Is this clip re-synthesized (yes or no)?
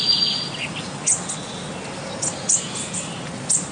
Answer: no